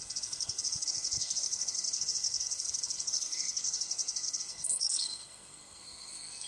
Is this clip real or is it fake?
fake